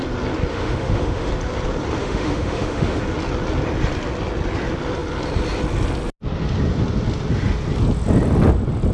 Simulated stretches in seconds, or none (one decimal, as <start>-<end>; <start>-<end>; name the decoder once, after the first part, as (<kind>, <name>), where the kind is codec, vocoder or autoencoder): 0.5-1.3 (autoencoder, DAC-VAE); 2.0-3.0